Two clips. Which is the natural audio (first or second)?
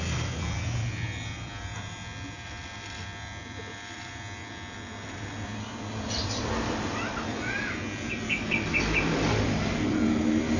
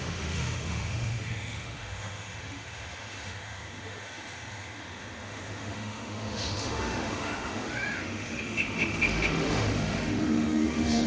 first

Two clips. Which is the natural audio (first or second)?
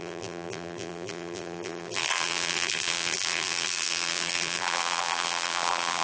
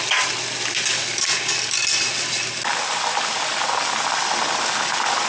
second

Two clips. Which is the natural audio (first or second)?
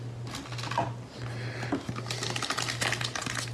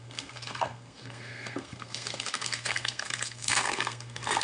first